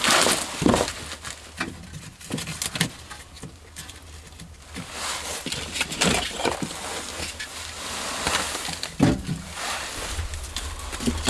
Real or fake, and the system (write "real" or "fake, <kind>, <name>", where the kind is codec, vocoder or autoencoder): real